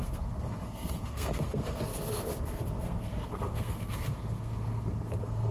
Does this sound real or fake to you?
fake